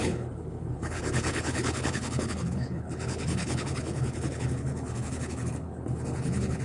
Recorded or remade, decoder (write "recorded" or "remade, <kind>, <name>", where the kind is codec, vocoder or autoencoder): remade, codec, HILCodec